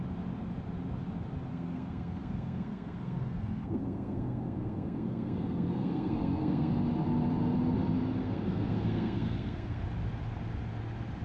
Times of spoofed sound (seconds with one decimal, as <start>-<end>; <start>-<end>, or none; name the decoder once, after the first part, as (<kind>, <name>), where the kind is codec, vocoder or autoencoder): 1.5-6.7 (codec, SNAC); 8.2-9.8

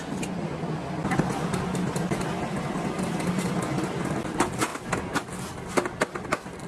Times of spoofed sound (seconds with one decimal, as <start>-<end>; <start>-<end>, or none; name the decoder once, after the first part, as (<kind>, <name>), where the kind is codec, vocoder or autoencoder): none

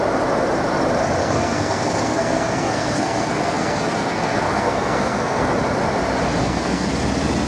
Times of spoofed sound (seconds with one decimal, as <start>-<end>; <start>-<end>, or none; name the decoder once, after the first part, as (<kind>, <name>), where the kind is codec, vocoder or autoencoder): 1.2-5.5 (codec, SNAC); 6.4-6.9

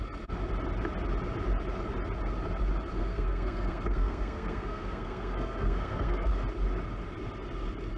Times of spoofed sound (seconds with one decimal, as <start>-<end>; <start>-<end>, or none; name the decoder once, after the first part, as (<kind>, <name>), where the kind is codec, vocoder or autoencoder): 3.0-6.3 (codec, SNAC)

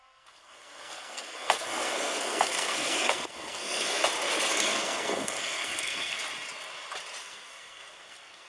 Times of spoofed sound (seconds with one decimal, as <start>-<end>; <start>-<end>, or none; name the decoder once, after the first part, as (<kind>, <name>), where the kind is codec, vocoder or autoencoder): 0.0-4.0 (codec, SNAC); 4.5-6.2; 7.2-8.5

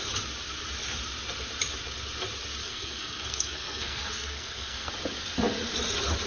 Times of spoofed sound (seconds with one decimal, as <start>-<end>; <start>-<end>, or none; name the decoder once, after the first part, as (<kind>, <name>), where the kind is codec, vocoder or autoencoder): 2.6-4.9 (codec, SNAC)

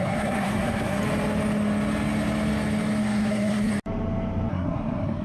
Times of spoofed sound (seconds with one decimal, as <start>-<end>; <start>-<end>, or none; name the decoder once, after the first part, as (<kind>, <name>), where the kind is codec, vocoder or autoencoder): 0.0-1.0 (codec, SNAC); 3.0-3.7; 4.5-5.2

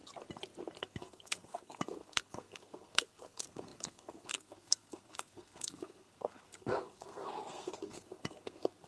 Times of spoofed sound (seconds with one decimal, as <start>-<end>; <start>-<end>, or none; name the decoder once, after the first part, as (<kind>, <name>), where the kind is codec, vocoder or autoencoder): 0.8-8.9 (codec, SNAC)